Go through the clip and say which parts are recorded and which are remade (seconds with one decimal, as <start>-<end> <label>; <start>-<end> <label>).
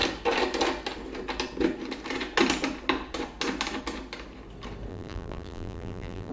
0.0-4.9 recorded; 4.9-6.3 remade